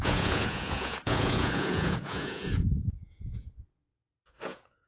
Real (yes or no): no